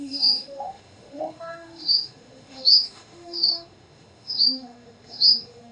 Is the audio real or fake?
fake